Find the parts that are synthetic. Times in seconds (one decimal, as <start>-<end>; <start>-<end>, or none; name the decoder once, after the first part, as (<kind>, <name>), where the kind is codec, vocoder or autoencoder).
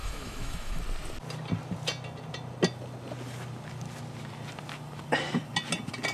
0.0-0.8 (autoencoder, DAC-VAE)